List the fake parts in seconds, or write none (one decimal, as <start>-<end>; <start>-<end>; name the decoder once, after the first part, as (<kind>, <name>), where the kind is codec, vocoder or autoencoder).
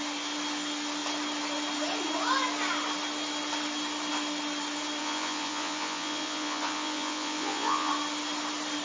5.0-7.9 (vocoder, Vocos)